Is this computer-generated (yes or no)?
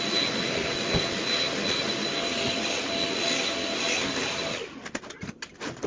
no